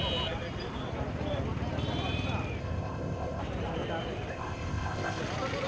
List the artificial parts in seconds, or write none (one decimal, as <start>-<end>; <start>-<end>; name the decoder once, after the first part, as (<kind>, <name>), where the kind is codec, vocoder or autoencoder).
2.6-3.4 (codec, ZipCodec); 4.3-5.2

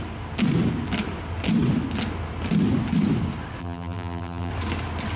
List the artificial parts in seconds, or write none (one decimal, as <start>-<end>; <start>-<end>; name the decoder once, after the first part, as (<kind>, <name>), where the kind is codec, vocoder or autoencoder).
3.6-4.5 (vocoder, BigVGAN v2)

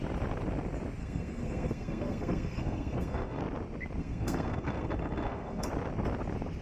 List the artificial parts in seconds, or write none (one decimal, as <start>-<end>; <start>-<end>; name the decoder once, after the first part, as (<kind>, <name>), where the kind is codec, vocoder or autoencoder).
1.0-3.4 (codec, SNAC); 4.0-5.7

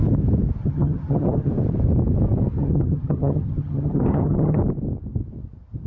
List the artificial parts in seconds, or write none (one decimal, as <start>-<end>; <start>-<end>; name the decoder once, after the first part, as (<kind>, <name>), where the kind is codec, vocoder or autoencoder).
0.6-1.5 (vocoder, HiFi-GAN); 2.6-4.6

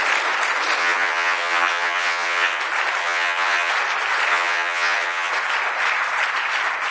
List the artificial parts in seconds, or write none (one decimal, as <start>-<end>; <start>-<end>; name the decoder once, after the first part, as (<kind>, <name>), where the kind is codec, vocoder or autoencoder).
0.8-2.6 (vocoder, HiFi-GAN); 3.0-3.7; 4.3-5.3